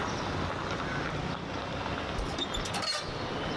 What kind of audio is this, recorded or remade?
recorded